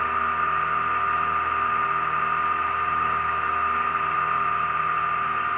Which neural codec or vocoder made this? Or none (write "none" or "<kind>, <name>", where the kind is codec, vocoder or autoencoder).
none